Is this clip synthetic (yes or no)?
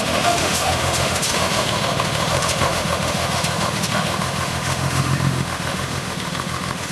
yes